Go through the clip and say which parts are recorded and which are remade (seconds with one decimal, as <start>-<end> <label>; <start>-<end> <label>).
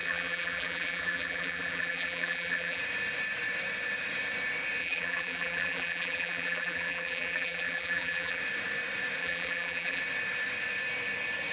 0.0-2.8 remade; 2.8-4.8 recorded; 4.8-8.4 remade; 8.4-9.2 recorded; 9.2-10.0 remade; 10.0-11.5 recorded